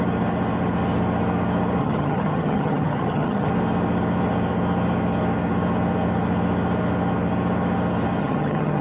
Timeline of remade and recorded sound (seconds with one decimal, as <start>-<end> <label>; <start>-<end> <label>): 0.0-1.8 recorded; 1.8-3.5 remade; 3.5-8.2 recorded; 8.2-8.8 remade